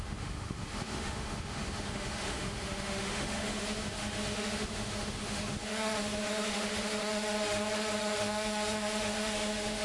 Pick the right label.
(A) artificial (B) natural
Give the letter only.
A